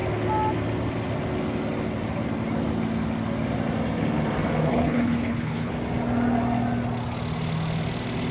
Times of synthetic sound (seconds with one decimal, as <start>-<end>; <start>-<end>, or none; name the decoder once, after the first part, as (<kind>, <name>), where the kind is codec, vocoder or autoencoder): 4.7-5.7 (codec, HILCodec)